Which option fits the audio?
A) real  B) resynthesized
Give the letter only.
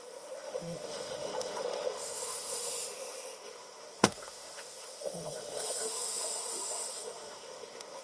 B